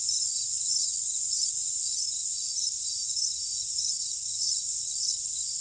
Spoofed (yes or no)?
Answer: no